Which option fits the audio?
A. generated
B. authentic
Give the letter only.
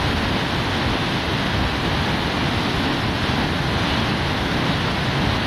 B